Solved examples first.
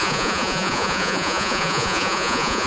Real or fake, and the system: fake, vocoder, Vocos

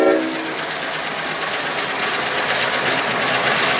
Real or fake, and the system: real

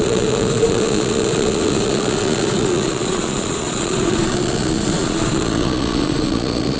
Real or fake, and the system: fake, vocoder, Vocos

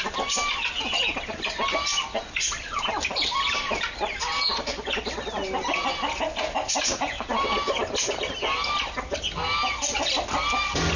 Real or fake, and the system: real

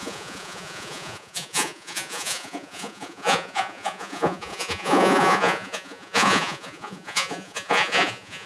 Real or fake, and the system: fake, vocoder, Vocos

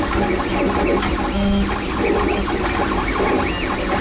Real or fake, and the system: real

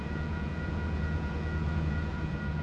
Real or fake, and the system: fake, vocoder, Vocos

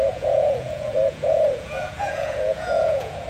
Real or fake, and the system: fake, vocoder, Vocos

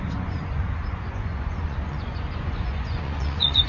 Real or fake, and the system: fake, vocoder, Vocos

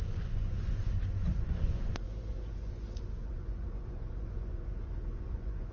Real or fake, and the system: fake, vocoder, Vocos